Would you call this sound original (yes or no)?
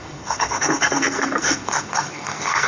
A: no